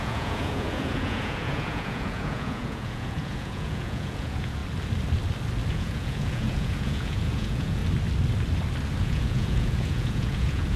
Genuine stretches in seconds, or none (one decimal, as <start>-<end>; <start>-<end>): 4.6-5.7; 7.8-9.0